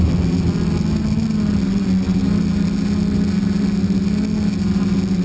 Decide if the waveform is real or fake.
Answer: real